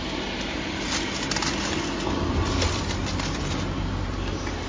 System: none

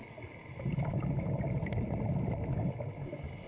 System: none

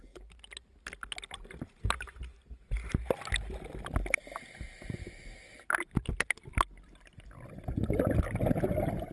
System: none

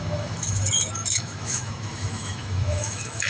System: autoencoder, DAC-VAE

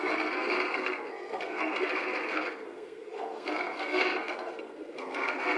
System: codec, SNAC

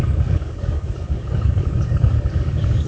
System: codec, DAC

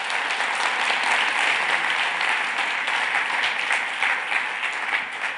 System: none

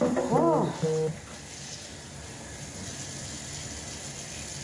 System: none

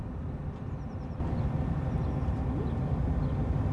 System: none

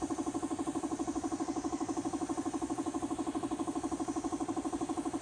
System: none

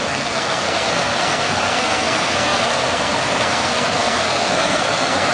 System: codec, SNAC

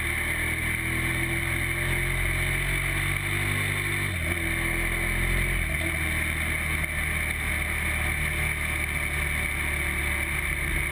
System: none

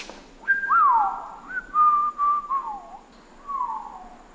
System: none